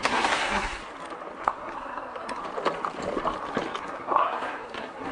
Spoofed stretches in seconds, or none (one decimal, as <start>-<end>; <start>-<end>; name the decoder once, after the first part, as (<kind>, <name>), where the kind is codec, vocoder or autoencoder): 0.0-0.8 (codec, SNAC); 1.4-2.4; 3.8-5.1